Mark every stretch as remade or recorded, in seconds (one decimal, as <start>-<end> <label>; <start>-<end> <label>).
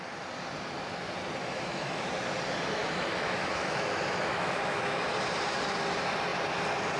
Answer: 0.0-1.4 recorded; 1.4-2.1 remade; 2.1-2.8 recorded; 2.8-5.1 remade; 5.1-7.0 recorded